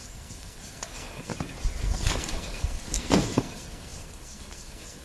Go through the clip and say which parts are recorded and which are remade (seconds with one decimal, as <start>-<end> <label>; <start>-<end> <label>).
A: 0.0-1.3 remade; 1.3-1.8 recorded; 1.8-5.0 remade